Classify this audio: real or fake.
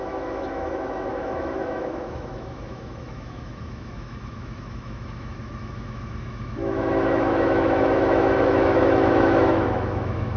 fake